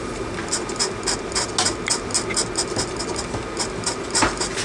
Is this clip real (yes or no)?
yes